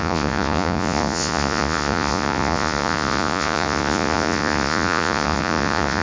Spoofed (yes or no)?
yes